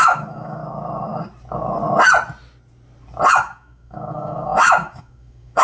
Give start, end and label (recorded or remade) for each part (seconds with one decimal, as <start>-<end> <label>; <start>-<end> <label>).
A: 0.0-0.6 remade; 0.6-3.3 recorded; 3.3-5.6 remade